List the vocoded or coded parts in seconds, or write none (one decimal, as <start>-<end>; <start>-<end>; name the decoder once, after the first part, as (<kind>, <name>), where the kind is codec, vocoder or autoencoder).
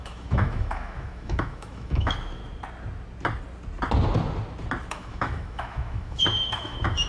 0.0-2.4 (autoencoder, DAC-VAE); 4.9-7.1